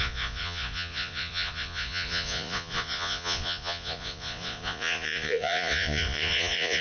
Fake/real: fake